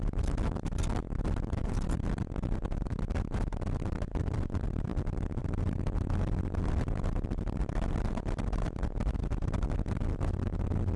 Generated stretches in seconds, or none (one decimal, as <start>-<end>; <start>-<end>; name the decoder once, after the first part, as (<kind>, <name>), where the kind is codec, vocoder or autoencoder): none